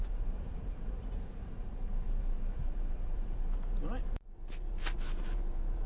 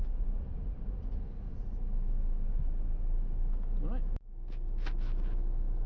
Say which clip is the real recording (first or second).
second